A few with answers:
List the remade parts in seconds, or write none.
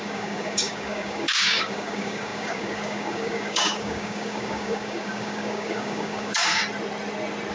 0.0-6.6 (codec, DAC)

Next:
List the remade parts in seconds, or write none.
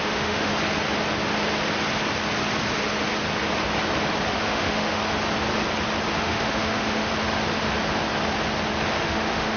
0.0-0.5 (autoencoder, DAC-VAE); 4.4-5.0; 6.2-7.1; 9.0-9.6